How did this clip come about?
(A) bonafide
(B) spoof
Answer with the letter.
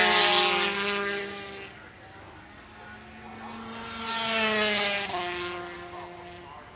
A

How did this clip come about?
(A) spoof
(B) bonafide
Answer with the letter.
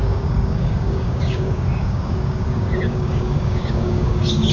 A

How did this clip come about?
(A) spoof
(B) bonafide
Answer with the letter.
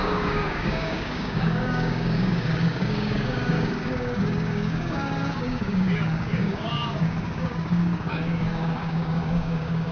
A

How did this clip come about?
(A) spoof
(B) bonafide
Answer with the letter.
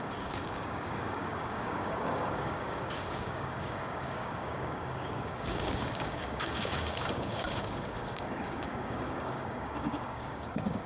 A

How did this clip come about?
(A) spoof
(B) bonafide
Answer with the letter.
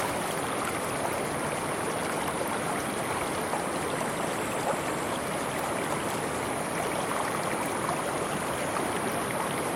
B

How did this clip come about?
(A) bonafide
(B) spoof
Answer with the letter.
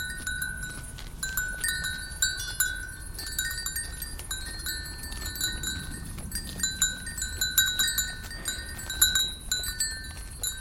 A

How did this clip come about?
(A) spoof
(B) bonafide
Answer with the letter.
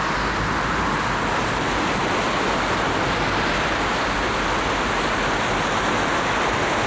B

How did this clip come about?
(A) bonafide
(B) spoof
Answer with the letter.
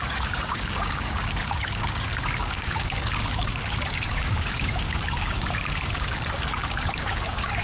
B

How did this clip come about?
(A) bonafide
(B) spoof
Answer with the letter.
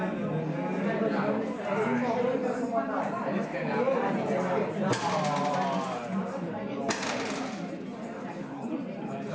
A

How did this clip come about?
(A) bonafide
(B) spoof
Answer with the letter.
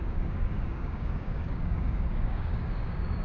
B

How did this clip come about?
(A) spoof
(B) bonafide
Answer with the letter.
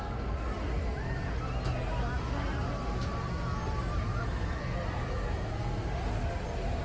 B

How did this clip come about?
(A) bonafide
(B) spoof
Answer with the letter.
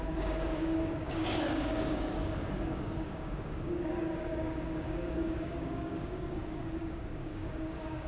B